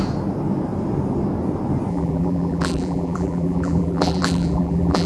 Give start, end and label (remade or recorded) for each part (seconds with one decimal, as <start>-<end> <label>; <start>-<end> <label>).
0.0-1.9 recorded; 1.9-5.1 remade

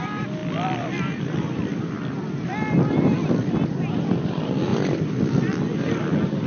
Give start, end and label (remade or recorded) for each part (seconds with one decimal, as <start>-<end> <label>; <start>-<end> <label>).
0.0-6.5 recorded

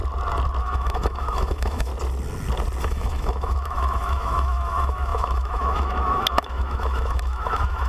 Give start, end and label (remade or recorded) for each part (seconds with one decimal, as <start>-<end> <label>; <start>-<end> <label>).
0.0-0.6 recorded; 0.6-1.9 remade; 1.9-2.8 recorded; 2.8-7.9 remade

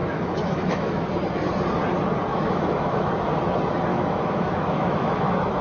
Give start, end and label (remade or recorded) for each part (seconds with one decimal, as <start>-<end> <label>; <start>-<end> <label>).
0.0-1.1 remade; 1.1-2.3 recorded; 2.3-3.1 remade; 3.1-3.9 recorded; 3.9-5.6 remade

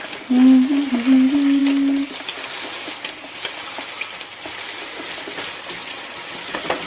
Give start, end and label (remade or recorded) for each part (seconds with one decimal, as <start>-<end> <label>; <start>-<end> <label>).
0.0-5.8 recorded; 5.8-6.9 remade